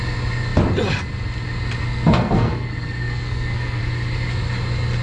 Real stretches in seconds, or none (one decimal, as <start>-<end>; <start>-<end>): 0.0-1.8; 3.8-5.0